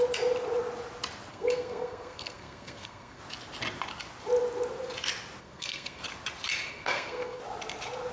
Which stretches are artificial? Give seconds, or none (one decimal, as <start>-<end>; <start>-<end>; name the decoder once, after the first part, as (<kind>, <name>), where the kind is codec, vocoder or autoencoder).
1.3-3.2 (codec, SNAC); 5.4-6.0; 6.7-7.4